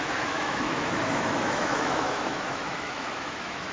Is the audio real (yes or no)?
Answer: no